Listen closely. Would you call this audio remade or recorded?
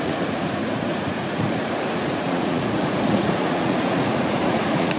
remade